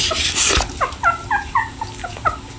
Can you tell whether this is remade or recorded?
remade